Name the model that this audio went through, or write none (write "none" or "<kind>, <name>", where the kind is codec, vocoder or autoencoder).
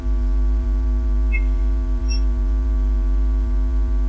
vocoder, BigVGAN v2